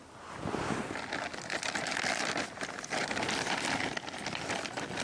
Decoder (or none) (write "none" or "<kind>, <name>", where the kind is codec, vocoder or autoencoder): none